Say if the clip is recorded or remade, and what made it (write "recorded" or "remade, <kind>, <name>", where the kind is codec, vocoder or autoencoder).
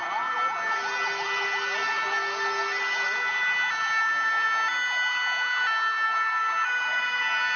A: recorded